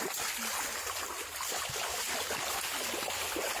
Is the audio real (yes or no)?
yes